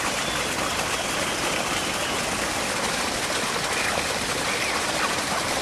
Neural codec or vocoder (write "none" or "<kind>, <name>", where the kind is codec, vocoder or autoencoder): none